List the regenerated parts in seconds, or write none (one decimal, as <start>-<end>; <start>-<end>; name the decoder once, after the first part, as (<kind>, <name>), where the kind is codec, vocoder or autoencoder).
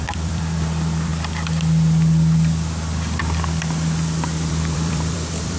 0.0-1.1 (vocoder, BigVGAN v2); 4.5-5.6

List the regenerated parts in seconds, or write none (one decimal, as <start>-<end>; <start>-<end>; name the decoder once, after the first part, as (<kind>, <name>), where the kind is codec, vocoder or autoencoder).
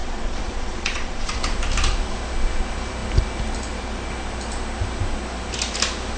0.0-1.4 (vocoder, Vocos)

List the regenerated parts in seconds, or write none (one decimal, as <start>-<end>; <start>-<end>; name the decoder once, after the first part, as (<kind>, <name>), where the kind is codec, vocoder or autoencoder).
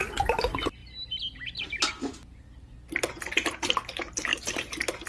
4.3-5.1 (vocoder, BigVGAN v2)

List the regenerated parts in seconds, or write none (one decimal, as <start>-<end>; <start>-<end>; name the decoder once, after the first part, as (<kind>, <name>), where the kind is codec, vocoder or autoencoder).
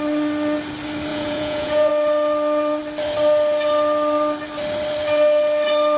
1.1-1.9 (vocoder, Vocos)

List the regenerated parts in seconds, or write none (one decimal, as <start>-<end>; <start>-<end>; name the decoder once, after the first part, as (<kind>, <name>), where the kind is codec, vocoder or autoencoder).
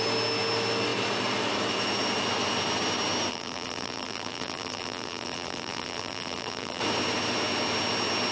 3.3-6.8 (vocoder, BigVGAN v2)